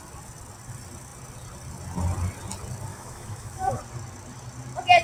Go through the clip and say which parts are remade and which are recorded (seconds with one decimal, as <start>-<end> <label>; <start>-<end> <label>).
0.0-2.9 recorded; 2.9-3.8 remade; 3.8-5.0 recorded